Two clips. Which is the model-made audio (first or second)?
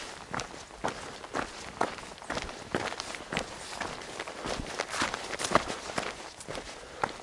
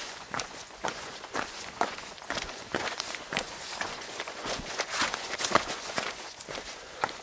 second